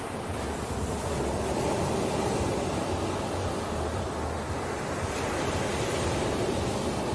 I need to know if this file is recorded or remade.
recorded